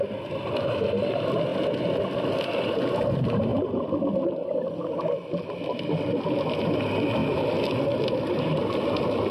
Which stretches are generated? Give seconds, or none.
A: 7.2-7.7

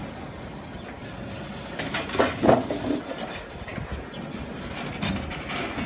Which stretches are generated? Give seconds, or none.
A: none

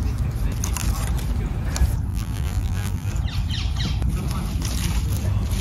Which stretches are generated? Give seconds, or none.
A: 2.1-3.1

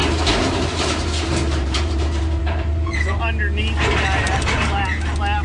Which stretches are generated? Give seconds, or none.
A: 0.0-3.2